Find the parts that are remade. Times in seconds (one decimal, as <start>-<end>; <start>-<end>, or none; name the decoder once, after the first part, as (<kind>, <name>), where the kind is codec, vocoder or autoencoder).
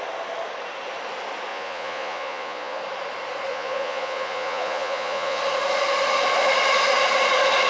1.5-2.8 (vocoder, Vocos); 3.5-5.4